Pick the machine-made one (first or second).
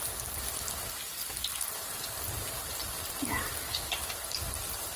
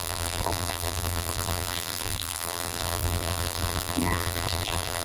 second